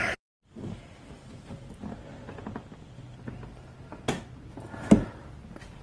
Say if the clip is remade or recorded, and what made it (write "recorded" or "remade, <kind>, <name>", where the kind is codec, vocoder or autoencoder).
recorded